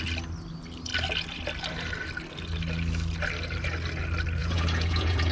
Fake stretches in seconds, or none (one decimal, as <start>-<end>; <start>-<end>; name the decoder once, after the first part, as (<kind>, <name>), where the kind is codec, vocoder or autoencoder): 4.4-5.3 (vocoder, Vocos)